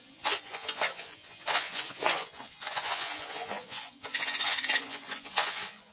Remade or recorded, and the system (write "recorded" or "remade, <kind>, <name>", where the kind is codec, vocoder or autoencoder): remade, vocoder, Vocos